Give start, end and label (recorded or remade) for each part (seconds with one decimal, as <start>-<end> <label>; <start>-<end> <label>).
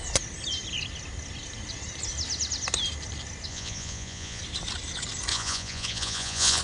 0.0-3.5 recorded; 3.5-4.4 remade; 4.4-5.3 recorded; 5.3-6.6 remade